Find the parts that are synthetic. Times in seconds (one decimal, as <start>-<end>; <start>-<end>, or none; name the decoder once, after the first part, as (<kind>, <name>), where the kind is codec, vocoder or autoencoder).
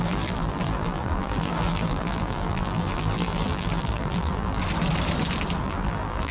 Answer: 0.0-4.6 (vocoder, BigVGAN v2); 5.6-6.3